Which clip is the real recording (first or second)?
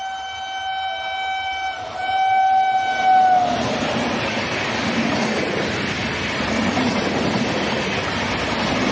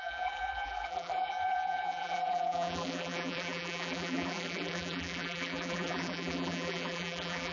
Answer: first